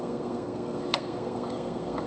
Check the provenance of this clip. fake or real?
fake